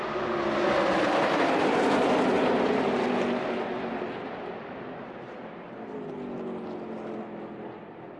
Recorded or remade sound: recorded